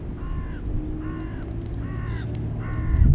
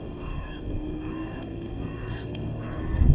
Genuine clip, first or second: first